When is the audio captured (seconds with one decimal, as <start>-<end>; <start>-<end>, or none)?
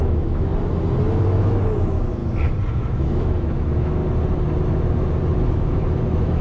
0.5-1.1; 2.2-2.7; 4.0-5.4